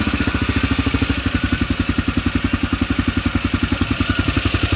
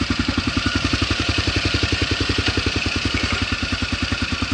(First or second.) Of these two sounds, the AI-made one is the second